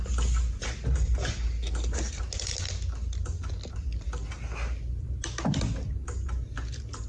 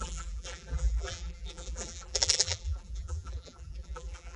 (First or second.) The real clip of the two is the first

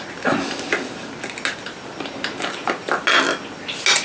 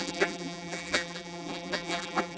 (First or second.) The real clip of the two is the first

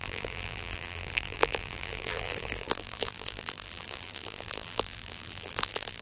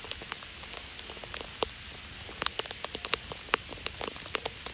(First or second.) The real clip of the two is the second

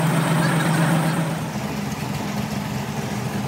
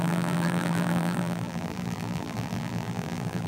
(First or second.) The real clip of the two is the first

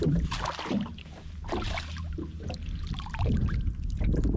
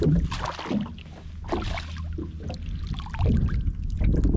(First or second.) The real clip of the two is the second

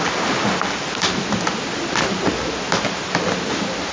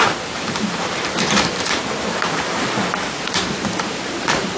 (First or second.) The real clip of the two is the first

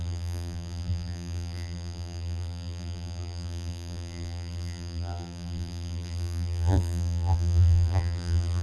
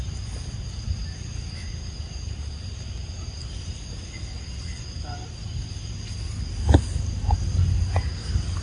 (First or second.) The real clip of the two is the second